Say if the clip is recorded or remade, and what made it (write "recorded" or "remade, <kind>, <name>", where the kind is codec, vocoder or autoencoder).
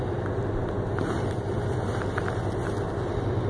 recorded